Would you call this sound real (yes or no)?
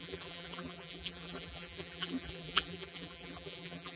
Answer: no